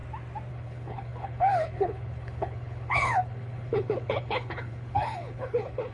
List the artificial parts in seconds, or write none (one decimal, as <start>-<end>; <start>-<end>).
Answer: 0.5-5.9